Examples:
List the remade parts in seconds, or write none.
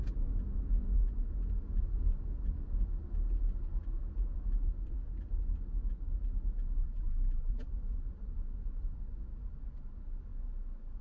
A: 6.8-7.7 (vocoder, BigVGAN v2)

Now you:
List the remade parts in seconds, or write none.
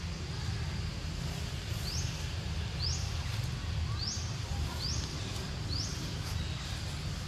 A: none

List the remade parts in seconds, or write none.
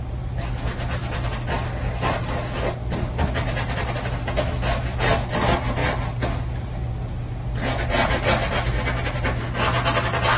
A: none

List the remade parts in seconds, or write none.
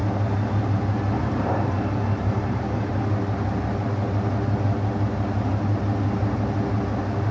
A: 1.2-2.9 (vocoder, BigVGAN v2)